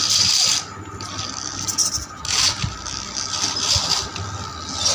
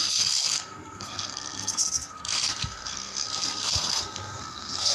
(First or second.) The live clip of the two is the first